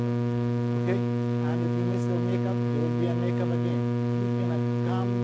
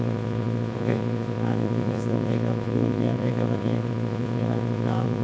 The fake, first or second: second